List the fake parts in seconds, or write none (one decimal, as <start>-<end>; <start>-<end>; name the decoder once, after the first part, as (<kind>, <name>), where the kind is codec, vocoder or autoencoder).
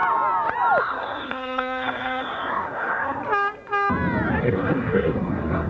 0.8-3.2 (codec, SNAC); 4.4-5.7